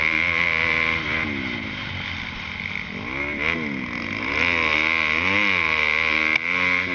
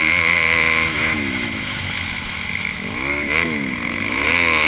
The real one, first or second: first